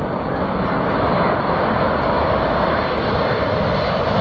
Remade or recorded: recorded